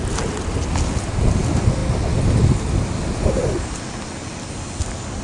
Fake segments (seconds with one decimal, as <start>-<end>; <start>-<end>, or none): none